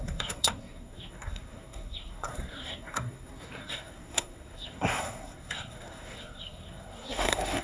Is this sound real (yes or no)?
no